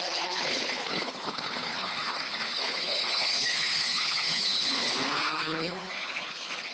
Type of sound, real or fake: fake